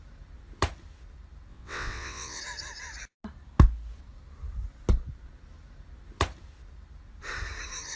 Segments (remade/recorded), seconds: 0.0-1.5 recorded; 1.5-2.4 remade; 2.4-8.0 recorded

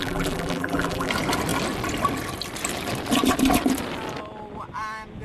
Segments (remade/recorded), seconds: 0.0-1.1 remade; 1.1-5.2 recorded